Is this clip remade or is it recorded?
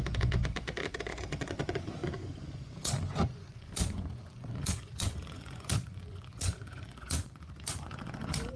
remade